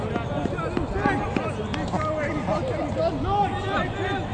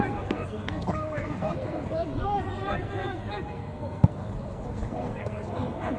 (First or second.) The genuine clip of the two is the first